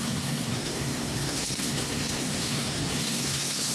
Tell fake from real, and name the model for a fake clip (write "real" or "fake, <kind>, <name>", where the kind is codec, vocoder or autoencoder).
fake, codec, SNAC